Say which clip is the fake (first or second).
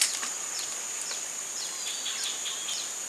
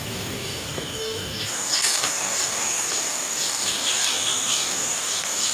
second